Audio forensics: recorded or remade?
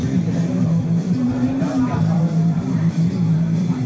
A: remade